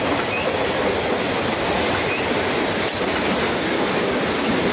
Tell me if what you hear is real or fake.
real